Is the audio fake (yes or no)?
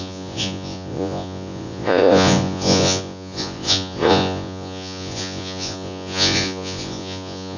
yes